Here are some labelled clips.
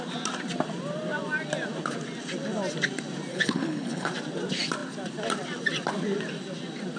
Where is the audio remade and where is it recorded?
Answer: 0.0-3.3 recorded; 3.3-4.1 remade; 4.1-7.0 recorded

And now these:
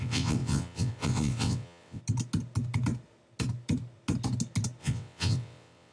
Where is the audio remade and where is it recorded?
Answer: 0.0-2.0 remade; 2.0-4.8 recorded; 4.8-5.9 remade

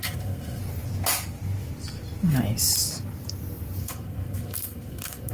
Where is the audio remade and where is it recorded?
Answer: 0.0-0.6 remade; 0.6-3.8 recorded; 3.8-5.3 remade

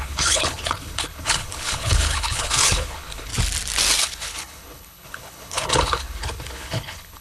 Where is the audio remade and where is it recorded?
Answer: 0.0-3.3 remade; 3.3-4.0 recorded; 4.0-7.2 remade

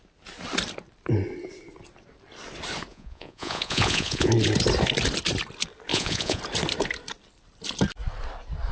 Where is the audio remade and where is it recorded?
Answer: 0.0-2.9 recorded; 2.9-4.3 remade; 4.3-5.9 recorded; 5.9-6.4 remade; 6.4-8.7 recorded

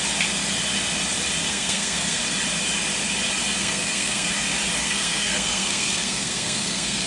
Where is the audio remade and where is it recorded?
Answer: 0.0-1.5 recorded; 1.5-2.2 remade; 2.2-3.6 recorded; 3.6-4.3 remade; 4.3-4.8 recorded; 4.8-7.1 remade

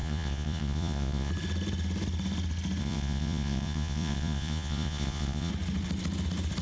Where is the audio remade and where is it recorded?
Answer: 0.0-1.3 remade; 1.3-2.8 recorded; 2.8-5.5 remade; 5.5-6.6 recorded

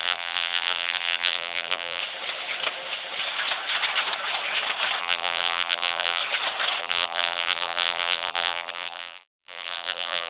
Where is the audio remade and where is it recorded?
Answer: 0.0-2.0 remade; 2.0-5.0 recorded; 5.0-6.2 remade; 6.2-6.8 recorded; 6.8-10.3 remade